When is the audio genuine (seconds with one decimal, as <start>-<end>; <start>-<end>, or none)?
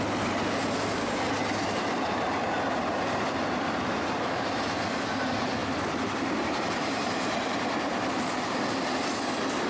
0.0-9.7